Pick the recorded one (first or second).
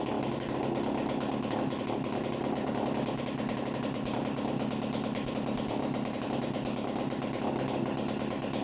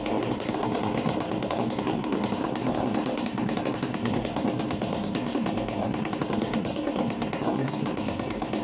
first